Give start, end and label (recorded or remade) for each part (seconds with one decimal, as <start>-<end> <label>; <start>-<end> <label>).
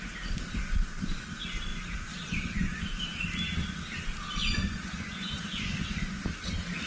0.0-1.7 recorded; 1.7-2.8 remade; 2.8-4.4 recorded; 4.4-6.2 remade; 6.2-6.9 recorded